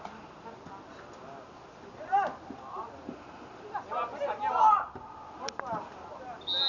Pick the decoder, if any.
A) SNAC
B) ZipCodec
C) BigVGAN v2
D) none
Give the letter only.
D